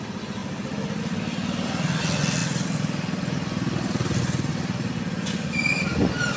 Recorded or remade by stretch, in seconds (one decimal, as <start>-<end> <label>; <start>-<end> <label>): 0.0-6.4 recorded